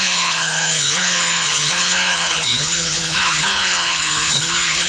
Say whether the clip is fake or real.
fake